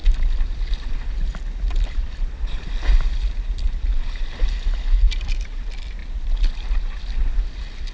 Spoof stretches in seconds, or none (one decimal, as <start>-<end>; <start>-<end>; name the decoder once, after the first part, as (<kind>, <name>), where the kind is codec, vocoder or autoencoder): 1.4-2.0 (vocoder, BigVGAN v2); 3.9-7.9